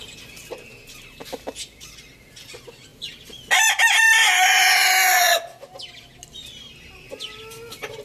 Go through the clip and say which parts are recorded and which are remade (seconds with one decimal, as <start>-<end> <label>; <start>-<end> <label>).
0.0-8.0 recorded